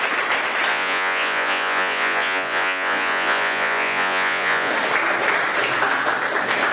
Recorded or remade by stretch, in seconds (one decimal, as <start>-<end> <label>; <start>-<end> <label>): 0.0-0.7 recorded; 0.7-4.7 remade; 4.7-6.7 recorded